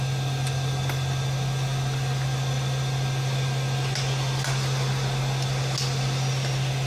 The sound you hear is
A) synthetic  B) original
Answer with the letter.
B